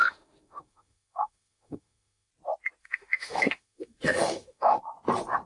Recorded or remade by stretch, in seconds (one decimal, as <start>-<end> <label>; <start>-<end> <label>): 0.0-2.3 remade; 2.3-2.8 recorded; 2.8-4.8 remade; 4.8-5.5 recorded